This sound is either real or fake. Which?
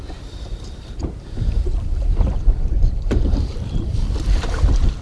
fake